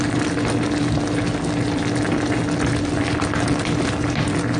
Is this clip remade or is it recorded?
recorded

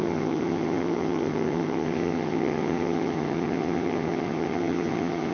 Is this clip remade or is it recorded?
remade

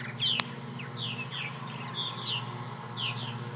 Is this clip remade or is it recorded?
recorded